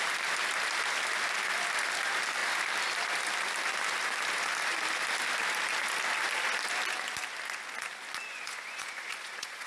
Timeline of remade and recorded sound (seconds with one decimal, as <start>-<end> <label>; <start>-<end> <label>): 0.0-8.3 recorded; 8.3-9.7 remade